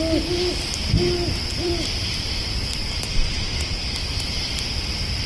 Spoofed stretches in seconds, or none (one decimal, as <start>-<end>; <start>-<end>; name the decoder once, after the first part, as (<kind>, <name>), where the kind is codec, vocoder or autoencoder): 1.5-4.7 (vocoder, BigVGAN v2)

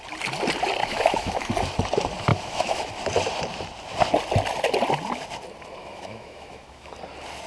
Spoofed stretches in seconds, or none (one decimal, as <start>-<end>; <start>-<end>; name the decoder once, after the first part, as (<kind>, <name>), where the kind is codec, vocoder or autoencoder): 0.8-1.5 (autoencoder, DAC-VAE); 2.3-2.9; 5.8-6.9

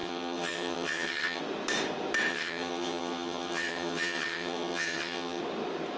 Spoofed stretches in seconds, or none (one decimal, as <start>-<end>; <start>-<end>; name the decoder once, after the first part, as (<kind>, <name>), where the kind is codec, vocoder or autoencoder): 0.0-1.4 (vocoder, HiFi-GAN); 2.3-5.4

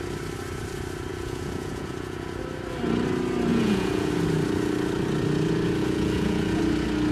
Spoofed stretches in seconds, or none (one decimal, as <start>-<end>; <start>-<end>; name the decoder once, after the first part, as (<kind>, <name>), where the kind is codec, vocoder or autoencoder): 1.1-2.4 (vocoder, Vocos); 3.5-4.1; 5.8-6.6

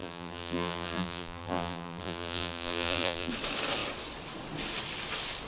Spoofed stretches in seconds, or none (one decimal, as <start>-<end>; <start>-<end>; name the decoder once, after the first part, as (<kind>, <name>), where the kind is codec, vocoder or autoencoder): 0.0-3.3 (vocoder, BigVGAN v2)

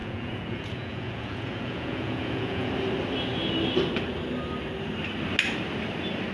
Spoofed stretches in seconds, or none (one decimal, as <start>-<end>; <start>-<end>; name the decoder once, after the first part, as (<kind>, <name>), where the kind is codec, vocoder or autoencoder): 0.0-2.7 (vocoder, Vocos)

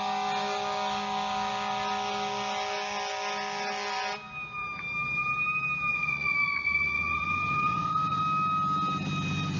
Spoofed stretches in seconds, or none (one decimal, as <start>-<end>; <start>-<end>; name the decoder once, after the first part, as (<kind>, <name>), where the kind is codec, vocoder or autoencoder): 5.9-8.2 (vocoder, Vocos)

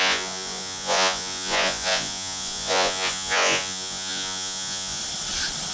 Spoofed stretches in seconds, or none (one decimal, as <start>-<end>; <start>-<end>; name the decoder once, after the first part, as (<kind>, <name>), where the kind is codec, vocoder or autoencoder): 0.0-5.0 (vocoder, Vocos)